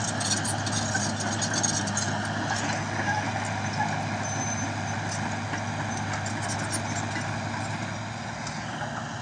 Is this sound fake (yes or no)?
no